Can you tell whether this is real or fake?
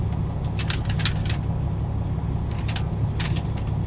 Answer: real